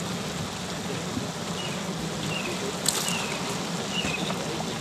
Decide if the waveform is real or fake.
real